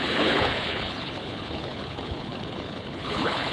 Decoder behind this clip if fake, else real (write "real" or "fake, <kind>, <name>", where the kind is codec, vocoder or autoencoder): fake, codec, HILCodec